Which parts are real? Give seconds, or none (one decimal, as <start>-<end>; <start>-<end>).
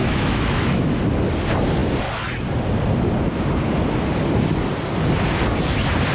1.0-6.1